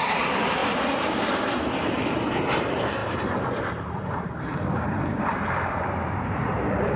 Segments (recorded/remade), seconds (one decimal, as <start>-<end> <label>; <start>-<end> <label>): 0.0-0.6 remade; 0.6-1.8 recorded; 1.8-7.0 remade